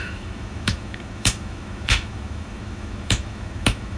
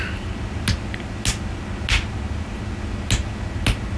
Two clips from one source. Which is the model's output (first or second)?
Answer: first